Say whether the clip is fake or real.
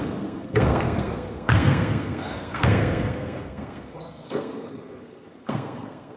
fake